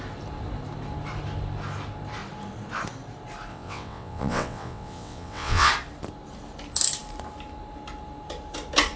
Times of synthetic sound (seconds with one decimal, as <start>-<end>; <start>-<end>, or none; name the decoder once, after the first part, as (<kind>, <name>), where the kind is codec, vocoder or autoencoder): 3.5-5.7 (vocoder, WaveNeXt)